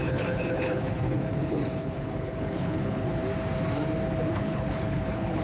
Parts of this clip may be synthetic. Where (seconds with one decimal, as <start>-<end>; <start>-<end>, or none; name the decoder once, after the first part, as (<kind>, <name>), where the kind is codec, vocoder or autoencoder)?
0.0-3.2 (codec, HILCodec); 4.3-5.4